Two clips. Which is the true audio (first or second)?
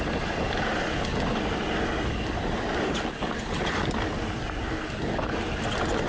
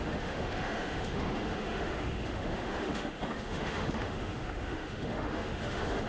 first